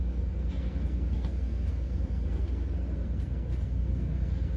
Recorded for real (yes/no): no